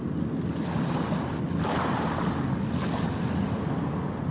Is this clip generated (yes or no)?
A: no